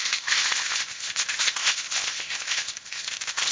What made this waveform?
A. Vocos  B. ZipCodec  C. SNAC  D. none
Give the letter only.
B